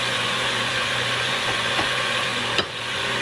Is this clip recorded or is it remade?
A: remade